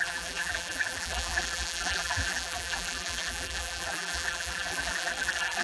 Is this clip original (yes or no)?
no